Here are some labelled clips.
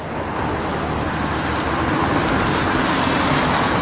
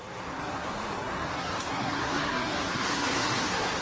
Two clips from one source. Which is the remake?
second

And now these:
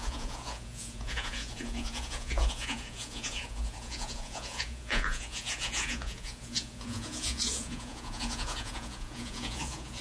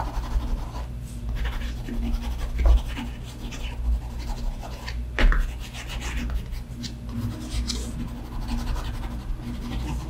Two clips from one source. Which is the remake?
first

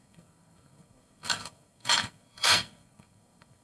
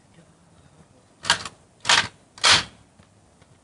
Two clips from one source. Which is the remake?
first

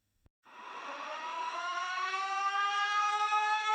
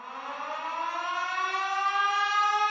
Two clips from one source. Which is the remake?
first